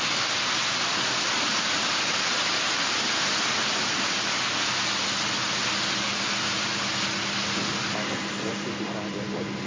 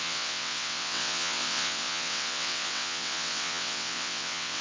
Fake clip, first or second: second